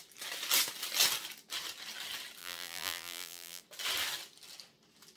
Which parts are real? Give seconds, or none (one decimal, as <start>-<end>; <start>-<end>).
0.0-2.4; 3.6-5.2

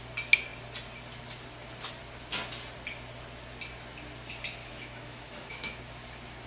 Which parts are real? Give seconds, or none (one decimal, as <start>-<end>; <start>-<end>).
0.0-4.6; 5.8-6.5

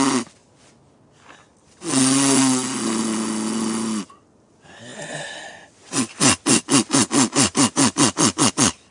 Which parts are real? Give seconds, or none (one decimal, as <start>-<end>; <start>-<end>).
0.0-8.9

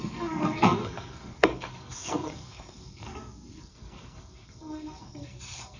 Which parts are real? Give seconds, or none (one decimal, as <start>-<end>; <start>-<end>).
none

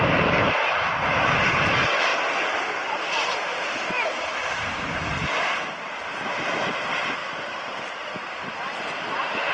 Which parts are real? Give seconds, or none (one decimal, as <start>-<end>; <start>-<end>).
2.1-2.8